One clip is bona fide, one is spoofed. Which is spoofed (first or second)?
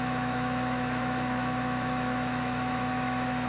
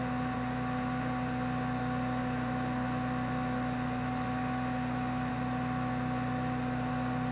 first